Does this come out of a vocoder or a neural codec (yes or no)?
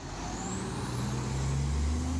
no